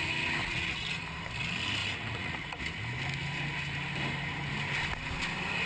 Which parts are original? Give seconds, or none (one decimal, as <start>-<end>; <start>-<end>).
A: 0.0-0.4; 1.0-1.8; 2.6-5.7